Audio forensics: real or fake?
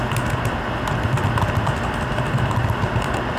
real